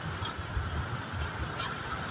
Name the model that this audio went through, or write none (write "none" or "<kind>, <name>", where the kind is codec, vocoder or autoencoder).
none